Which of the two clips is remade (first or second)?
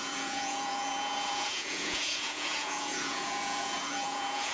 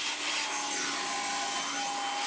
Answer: first